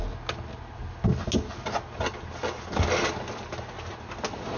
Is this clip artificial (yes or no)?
no